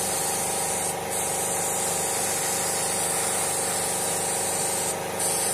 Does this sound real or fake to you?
real